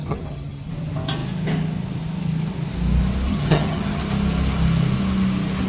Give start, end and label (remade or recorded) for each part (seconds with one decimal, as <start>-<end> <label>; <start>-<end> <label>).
0.0-0.7 remade; 0.7-3.3 recorded; 3.3-4.0 remade; 4.0-5.7 recorded